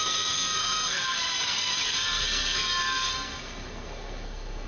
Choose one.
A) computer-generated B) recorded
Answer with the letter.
A